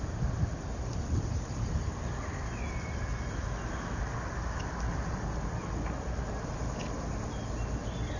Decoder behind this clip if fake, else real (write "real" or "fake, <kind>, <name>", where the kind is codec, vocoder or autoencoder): real